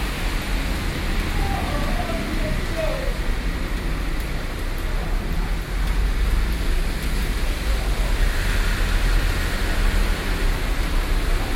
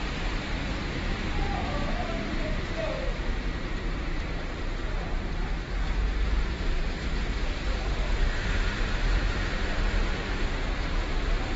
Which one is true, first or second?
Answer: first